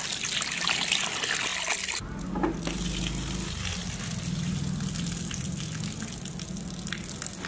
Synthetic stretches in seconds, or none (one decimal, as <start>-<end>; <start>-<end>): none